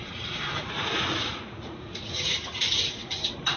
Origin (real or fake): fake